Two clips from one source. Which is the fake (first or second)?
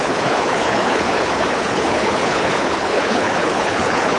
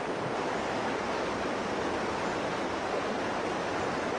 first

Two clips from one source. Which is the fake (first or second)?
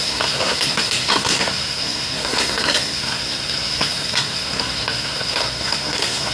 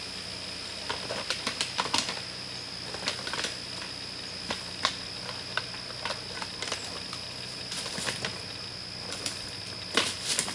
first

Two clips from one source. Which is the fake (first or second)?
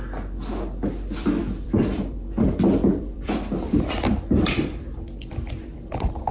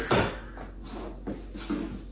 first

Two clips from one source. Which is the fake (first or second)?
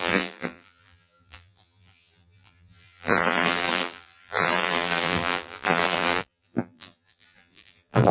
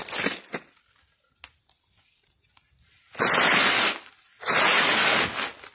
first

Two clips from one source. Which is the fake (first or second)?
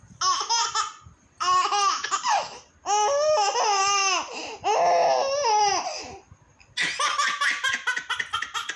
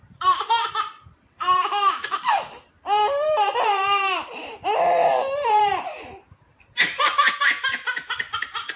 second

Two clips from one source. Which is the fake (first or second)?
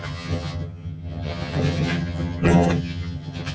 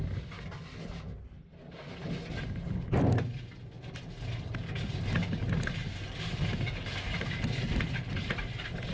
first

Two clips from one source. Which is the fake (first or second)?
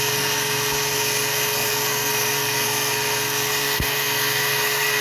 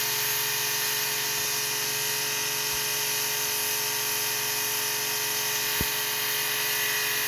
first